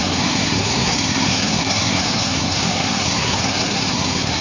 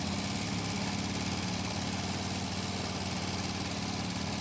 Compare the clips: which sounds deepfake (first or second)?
first